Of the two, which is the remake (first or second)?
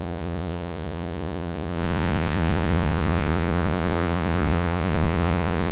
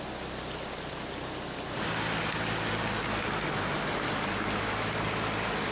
first